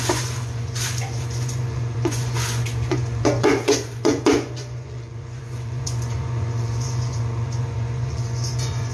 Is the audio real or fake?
fake